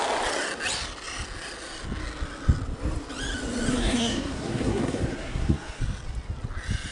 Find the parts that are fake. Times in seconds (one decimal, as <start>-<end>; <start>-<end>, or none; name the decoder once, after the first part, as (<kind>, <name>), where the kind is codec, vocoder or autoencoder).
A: 3.7-5.8 (codec, SNAC)